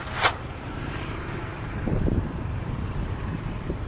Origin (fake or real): fake